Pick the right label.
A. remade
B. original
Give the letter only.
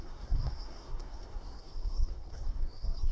A